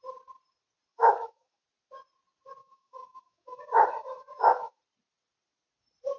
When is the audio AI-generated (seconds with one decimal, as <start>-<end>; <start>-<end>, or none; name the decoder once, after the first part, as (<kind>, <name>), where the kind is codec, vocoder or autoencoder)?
0.9-1.6 (autoencoder, DAC-VAE); 2.6-4.8